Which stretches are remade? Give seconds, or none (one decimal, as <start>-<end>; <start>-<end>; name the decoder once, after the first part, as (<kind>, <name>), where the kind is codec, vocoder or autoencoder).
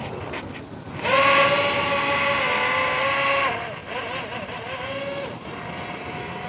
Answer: none